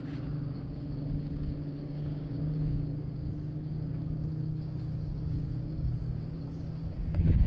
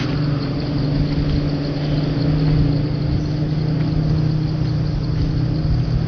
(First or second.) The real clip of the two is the second